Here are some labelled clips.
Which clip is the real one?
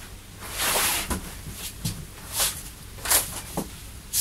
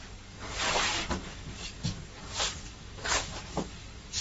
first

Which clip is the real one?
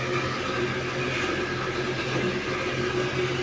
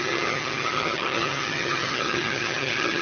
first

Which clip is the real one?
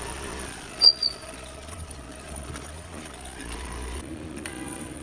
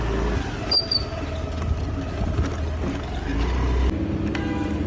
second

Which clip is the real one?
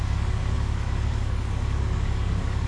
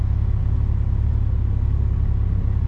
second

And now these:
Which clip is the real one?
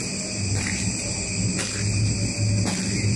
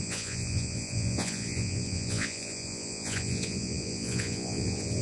first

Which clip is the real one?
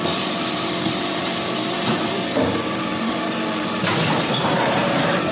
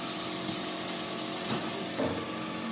second